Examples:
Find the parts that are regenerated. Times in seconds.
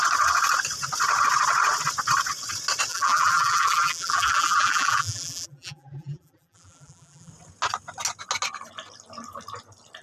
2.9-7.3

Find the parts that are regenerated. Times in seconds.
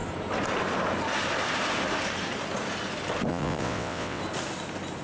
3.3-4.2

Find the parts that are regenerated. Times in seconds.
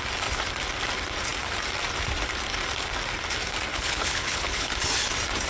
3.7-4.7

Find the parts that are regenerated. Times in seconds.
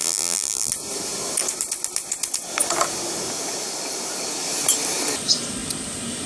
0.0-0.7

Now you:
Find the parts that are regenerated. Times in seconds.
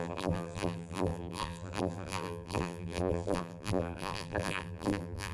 0.0-5.3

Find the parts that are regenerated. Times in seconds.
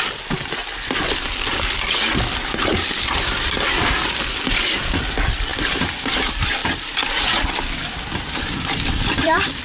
0.0-0.6; 3.1-6.6; 8.4-9.6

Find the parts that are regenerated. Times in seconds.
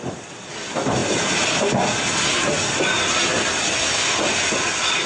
none